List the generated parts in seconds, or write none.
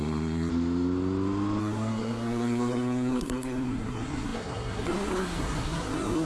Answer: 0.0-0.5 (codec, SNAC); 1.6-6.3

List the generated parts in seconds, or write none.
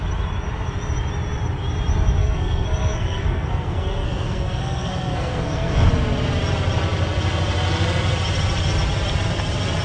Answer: 2.2-5.9 (codec, SNAC)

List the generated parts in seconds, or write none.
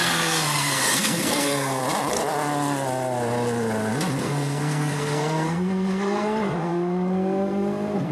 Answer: 0.0-1.8 (codec, SNAC); 4.2-8.1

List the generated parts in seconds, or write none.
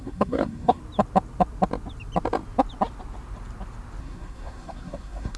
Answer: 0.0-0.8 (codec, SNAC); 4.0-5.4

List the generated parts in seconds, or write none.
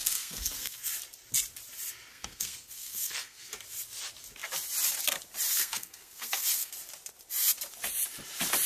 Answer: 0.0-0.9 (codec, SNAC); 2.1-3.5; 5.5-6.7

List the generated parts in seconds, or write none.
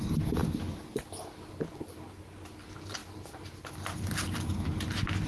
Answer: none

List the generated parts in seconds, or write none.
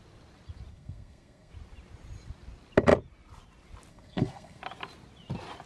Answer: 0.7-1.5 (codec, SNAC); 3.9-4.6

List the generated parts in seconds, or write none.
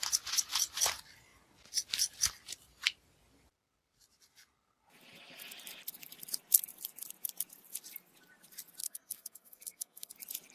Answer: 8.8-10.1 (codec, SNAC)